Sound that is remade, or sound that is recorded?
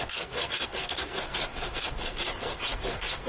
remade